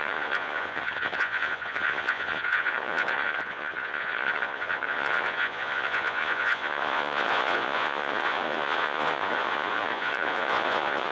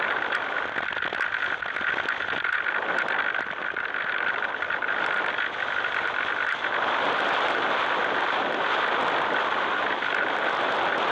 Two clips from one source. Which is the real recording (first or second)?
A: second